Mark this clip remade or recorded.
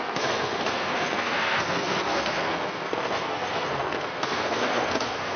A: remade